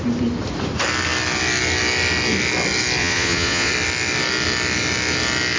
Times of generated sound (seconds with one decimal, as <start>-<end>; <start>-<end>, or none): 3.0-3.7